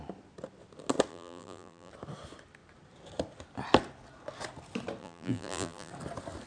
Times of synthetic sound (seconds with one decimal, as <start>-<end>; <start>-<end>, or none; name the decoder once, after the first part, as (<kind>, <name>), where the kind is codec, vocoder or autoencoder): 1.1-1.9 (vocoder, BigVGAN v2); 5.0-5.9